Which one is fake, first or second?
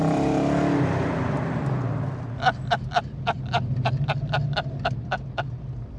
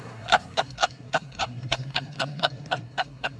second